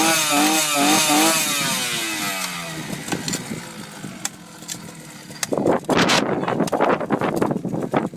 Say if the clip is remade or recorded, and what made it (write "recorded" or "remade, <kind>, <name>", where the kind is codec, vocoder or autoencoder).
recorded